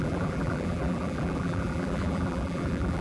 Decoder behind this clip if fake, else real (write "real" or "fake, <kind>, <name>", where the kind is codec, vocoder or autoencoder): fake, vocoder, BigVGAN v2